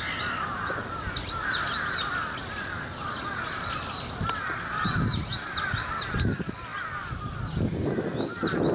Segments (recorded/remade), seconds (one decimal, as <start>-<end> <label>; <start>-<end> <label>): 0.0-8.7 recorded